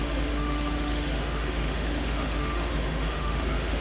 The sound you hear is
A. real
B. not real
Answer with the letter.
B